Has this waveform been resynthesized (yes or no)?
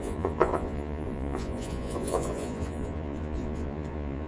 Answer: yes